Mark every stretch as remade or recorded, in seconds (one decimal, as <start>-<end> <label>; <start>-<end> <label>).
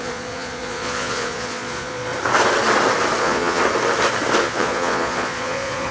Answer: 0.0-2.1 remade; 2.1-3.2 recorded; 3.2-3.6 remade; 3.6-4.4 recorded; 4.4-5.9 remade